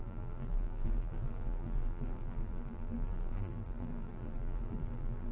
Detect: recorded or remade remade